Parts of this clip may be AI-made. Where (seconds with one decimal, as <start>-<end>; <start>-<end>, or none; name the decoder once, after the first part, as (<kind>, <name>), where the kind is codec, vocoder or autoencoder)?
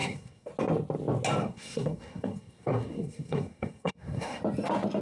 0.0-0.5 (codec, SNAC); 1.4-4.4